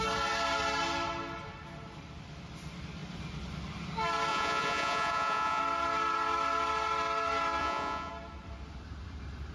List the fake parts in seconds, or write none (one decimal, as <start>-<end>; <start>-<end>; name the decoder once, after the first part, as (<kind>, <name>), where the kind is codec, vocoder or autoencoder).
4.3-5.6 (vocoder, Vocos); 7.6-8.1